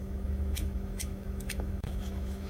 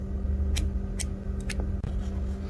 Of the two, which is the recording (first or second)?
second